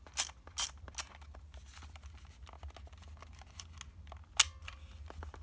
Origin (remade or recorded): recorded